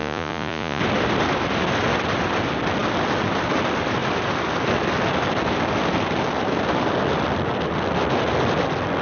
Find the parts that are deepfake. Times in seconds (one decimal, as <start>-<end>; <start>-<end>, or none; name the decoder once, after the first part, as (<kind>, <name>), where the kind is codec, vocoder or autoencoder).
0.0-0.8 (vocoder, Vocos)